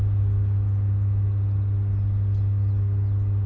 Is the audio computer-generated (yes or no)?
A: no